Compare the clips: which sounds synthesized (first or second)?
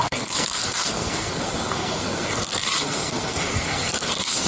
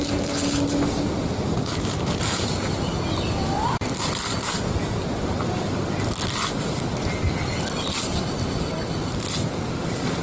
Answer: first